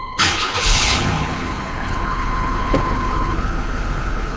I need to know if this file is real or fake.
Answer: fake